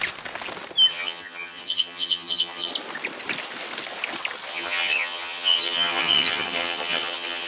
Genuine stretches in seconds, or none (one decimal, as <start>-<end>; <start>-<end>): 0.0-0.9; 2.7-4.5